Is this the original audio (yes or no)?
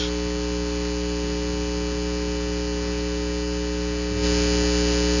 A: yes